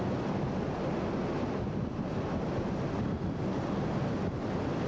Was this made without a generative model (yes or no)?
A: yes